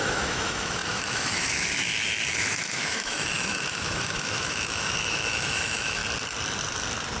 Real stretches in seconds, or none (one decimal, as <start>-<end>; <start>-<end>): 6.0-7.2